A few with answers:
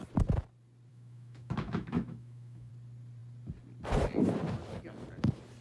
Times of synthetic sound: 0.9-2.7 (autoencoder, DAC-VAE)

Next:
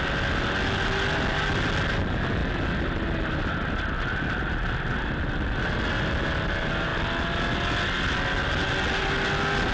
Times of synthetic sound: none

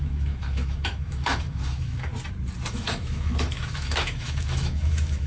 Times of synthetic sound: 0.0-2.1 (autoencoder, DAC-VAE); 2.7-5.3

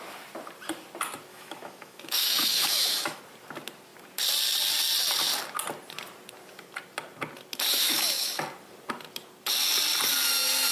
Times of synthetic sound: 1.3-3.2 (autoencoder, DAC-VAE); 7.7-8.4

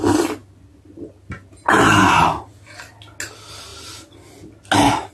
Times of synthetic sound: none

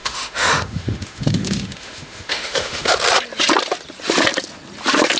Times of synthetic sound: 0.0-2.9 (autoencoder, DAC-VAE)